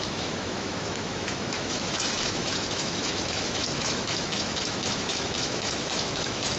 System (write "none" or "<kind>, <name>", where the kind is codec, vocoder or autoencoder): autoencoder, DAC-VAE